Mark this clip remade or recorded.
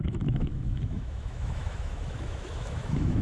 remade